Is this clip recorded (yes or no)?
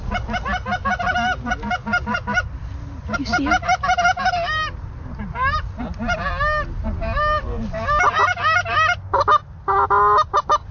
yes